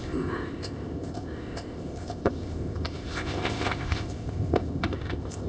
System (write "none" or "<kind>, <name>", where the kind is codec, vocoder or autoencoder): codec, ZipCodec